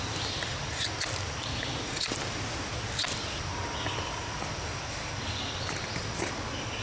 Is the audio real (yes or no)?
yes